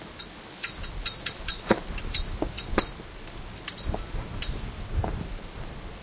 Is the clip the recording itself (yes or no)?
yes